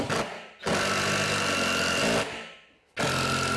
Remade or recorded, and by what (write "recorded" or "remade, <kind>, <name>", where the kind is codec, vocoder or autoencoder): recorded